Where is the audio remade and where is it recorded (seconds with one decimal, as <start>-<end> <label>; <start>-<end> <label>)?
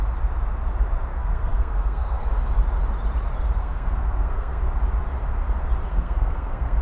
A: 0.0-1.1 recorded; 1.1-2.4 remade; 2.4-3.6 recorded; 3.6-4.6 remade; 4.6-5.9 recorded; 5.9-6.8 remade